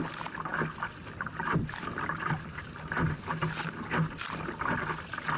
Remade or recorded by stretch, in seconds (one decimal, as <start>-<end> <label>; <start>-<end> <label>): 0.0-5.4 recorded